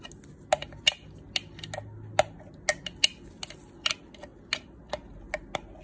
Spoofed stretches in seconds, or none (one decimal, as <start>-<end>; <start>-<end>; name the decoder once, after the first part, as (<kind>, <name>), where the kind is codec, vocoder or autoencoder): none

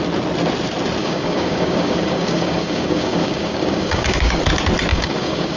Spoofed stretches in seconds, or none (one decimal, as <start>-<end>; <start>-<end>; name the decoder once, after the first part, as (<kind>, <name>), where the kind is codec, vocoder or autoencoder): 1.0-4.4 (codec, DAC); 4.9-5.6

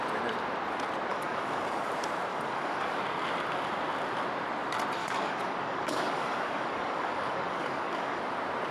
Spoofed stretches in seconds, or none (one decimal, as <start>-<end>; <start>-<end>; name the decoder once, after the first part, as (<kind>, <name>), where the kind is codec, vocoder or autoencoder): 1.1-1.9 (codec, DAC); 2.3-3.0; 5.0-8.2